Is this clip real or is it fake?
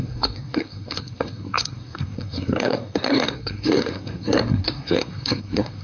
fake